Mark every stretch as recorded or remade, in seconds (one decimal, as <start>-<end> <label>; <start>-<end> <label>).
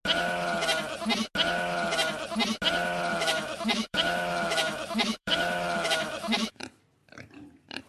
0.0-3.1 recorded; 3.1-6.6 remade; 6.6-7.9 recorded